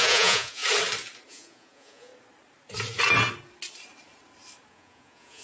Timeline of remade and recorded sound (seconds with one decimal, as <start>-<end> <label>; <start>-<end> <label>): 0.0-0.6 remade; 0.6-1.3 recorded; 1.3-2.1 remade; 2.1-4.7 recorded; 4.7-5.4 remade